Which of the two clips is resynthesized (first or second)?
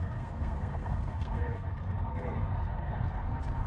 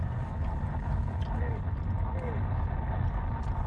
first